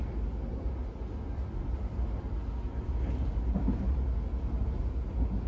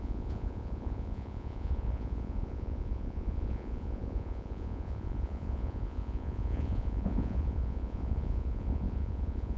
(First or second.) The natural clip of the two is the first